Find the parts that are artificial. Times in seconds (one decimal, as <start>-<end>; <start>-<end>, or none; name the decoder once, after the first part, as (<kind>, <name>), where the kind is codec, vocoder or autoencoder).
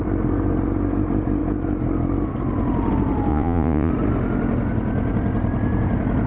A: 3.3-3.9 (vocoder, Vocos)